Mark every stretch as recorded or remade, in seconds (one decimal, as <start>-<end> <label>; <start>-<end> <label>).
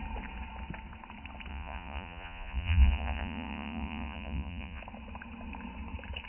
0.0-1.5 recorded; 1.5-4.8 remade; 4.8-6.3 recorded